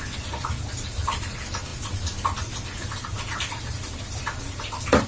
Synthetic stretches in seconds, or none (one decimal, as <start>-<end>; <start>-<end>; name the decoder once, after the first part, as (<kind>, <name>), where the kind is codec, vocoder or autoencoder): none